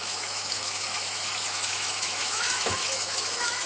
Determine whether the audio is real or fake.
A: fake